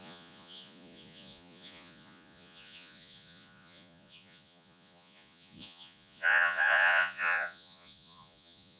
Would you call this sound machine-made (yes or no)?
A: yes